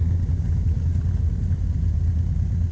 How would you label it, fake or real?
real